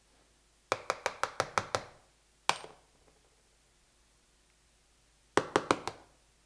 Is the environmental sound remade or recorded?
recorded